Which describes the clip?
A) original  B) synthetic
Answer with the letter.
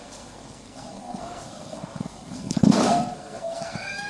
B